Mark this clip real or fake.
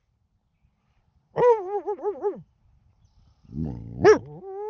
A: real